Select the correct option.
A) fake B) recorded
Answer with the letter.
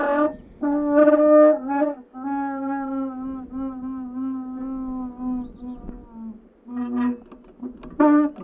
B